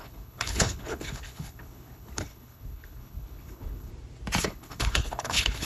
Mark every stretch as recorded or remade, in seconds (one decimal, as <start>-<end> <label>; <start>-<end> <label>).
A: 0.0-3.9 remade; 3.9-4.4 recorded; 4.4-5.7 remade